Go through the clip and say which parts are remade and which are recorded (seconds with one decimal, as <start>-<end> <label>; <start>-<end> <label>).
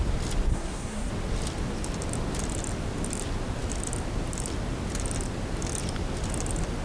0.0-0.5 recorded; 0.5-1.1 remade; 1.1-6.8 recorded